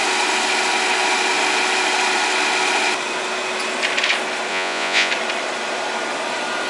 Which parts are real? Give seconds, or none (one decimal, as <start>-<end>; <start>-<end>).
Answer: 0.0-4.5; 5.1-6.7